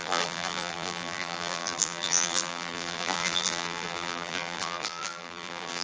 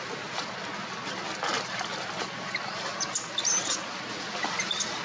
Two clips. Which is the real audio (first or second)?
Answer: second